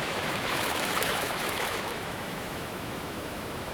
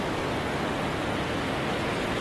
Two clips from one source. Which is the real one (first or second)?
second